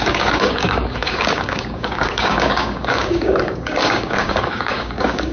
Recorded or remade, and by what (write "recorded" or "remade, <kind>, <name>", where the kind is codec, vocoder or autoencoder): remade, codec, DAC